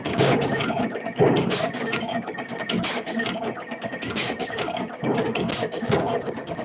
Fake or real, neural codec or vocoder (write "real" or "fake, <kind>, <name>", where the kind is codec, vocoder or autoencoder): fake, codec, DAC